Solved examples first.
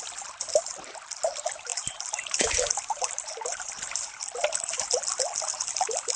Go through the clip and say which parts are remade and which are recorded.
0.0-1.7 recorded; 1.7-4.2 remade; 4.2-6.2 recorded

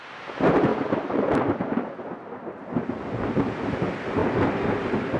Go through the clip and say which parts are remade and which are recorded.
0.0-0.7 recorded; 0.7-1.9 remade; 1.9-4.2 recorded; 4.2-5.2 remade

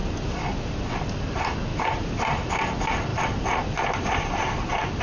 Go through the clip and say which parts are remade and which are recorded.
0.0-1.7 recorded; 1.7-2.5 remade; 2.5-3.1 recorded; 3.1-5.0 remade

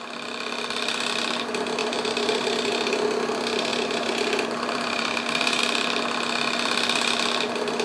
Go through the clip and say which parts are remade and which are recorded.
0.0-1.8 recorded; 1.8-2.7 remade; 2.7-3.7 recorded; 3.7-5.6 remade; 5.6-7.8 recorded